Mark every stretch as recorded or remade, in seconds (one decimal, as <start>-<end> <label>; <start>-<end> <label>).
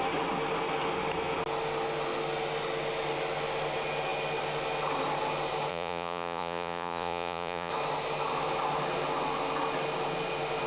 0.0-5.7 recorded; 5.7-7.7 remade; 7.7-10.7 recorded